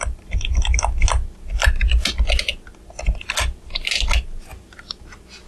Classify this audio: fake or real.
real